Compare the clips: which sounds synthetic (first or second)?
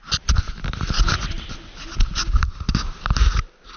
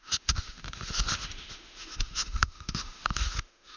second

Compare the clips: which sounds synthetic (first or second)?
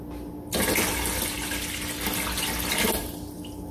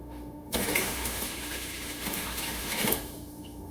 second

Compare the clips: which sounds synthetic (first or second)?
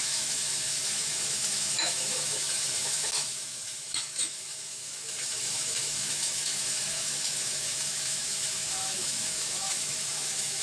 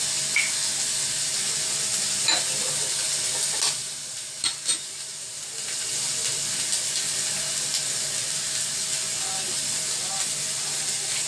first